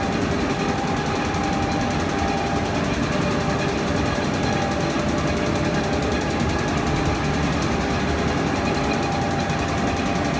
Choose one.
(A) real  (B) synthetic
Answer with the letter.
A